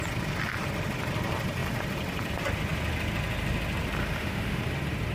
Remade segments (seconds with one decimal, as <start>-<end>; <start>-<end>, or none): 4.0-4.6